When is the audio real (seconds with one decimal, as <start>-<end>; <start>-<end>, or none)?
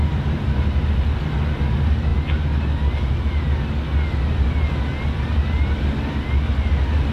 0.6-7.1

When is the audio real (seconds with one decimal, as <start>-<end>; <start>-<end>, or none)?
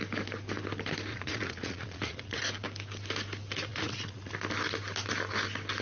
0.0-1.1; 2.4-3.7; 4.3-5.8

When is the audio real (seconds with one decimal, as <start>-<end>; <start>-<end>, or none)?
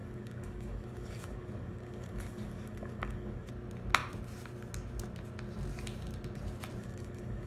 3.5-6.8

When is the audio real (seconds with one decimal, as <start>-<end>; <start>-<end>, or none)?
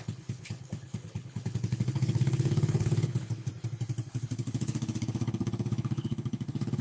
3.5-4.1